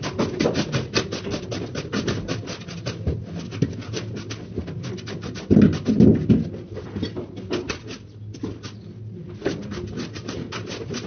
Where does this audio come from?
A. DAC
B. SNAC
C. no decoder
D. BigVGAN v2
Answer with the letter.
C